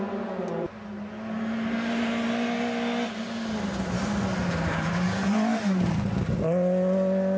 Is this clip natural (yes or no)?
yes